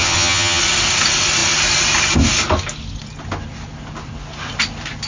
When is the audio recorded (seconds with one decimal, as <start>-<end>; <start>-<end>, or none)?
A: 0.6-5.1